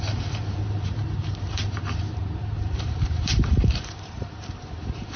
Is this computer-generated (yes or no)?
yes